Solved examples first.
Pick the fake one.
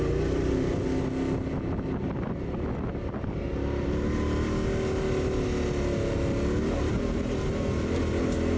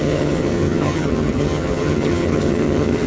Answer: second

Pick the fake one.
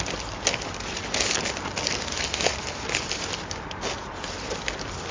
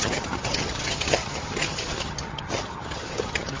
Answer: second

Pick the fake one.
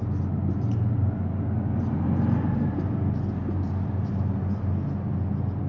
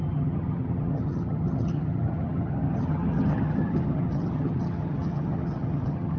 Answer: second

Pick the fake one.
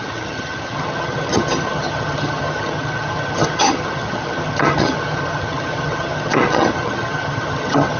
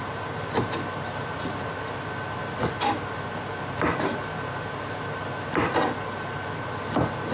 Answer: first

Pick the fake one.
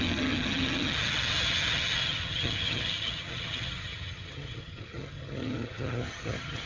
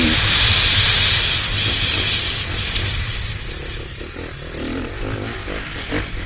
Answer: first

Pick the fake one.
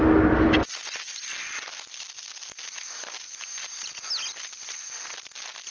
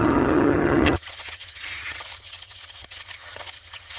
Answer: second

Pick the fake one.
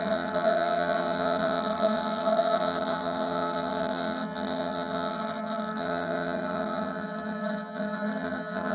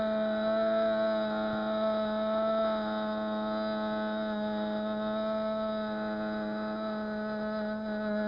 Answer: first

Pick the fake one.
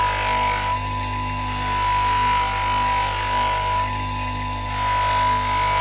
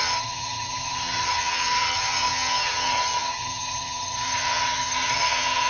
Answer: second